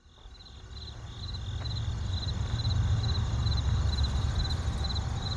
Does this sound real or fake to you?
real